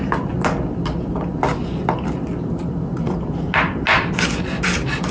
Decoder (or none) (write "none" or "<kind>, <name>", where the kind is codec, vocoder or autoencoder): none